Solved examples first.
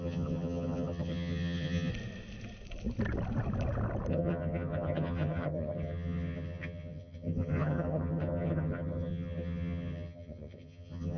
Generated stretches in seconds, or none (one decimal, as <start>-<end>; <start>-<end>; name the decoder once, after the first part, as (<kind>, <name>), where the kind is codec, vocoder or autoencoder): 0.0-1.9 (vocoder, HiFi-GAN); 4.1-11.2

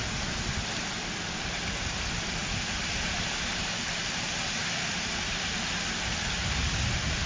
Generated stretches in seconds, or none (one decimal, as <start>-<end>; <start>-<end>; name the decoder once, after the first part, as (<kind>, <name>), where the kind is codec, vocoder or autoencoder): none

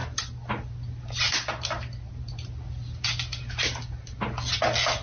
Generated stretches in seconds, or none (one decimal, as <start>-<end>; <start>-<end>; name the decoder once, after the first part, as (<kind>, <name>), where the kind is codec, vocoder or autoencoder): none

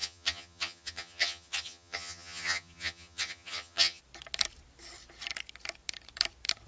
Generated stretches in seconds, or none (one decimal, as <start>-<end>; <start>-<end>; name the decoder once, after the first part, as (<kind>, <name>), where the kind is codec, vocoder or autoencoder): 0.0-4.0 (vocoder, HiFi-GAN)

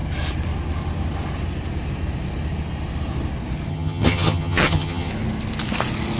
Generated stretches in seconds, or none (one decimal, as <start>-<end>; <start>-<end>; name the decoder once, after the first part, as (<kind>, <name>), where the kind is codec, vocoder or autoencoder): 3.7-5.1 (vocoder, HiFi-GAN)